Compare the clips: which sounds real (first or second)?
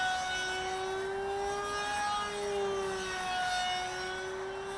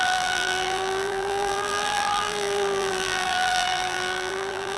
first